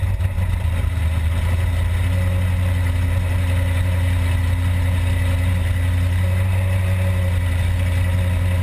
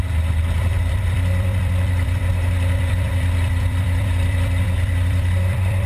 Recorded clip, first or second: first